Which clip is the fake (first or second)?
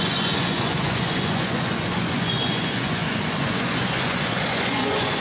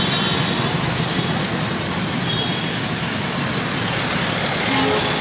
first